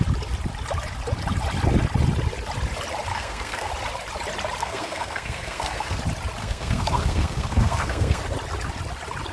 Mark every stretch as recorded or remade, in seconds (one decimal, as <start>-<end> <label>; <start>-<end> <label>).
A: 0.0-3.1 recorded; 3.1-3.7 remade; 3.7-4.6 recorded; 4.6-6.0 remade; 6.0-6.4 recorded; 6.4-8.2 remade; 8.2-9.3 recorded